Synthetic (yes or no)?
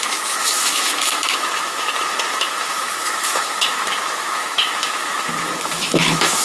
yes